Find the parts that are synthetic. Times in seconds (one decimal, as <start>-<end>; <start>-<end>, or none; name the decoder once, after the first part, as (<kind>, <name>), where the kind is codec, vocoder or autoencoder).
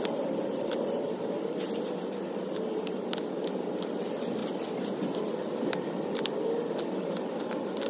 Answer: none